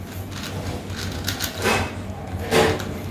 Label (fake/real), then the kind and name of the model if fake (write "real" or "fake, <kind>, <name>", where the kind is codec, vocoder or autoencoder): real